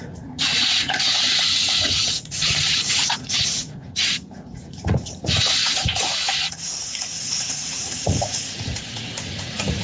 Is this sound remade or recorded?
remade